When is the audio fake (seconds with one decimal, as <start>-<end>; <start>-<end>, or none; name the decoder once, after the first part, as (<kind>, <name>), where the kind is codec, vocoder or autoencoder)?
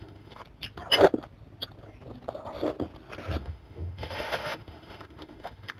0.0-0.4 (autoencoder, DAC-VAE); 3.4-5.8